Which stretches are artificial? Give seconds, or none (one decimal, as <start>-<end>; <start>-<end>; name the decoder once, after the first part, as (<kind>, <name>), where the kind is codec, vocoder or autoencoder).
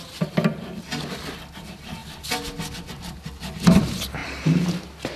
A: none